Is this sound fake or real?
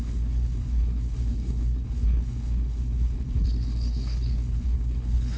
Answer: fake